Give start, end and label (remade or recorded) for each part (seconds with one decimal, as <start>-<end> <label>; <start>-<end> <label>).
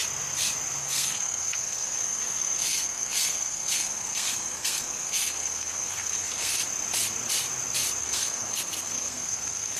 0.0-0.8 recorded; 0.8-6.6 remade; 6.6-8.0 recorded; 8.0-9.8 remade